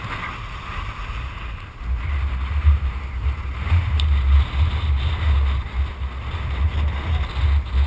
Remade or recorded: recorded